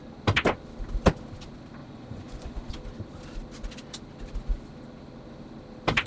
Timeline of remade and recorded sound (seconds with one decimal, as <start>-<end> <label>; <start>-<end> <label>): 0.0-1.8 recorded; 1.8-2.7 remade; 2.7-6.1 recorded